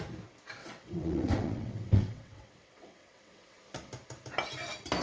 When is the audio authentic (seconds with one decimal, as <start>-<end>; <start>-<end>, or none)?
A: 0.0-0.6; 3.6-5.0